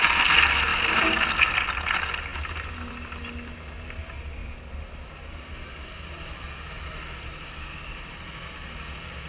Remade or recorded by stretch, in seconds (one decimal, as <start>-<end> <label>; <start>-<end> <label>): 0.0-9.3 recorded